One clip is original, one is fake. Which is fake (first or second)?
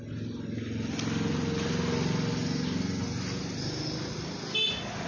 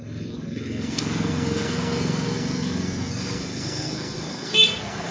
second